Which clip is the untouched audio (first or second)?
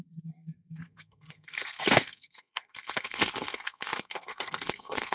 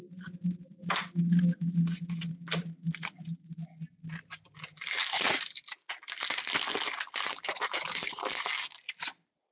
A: second